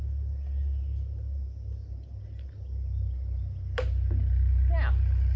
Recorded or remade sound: recorded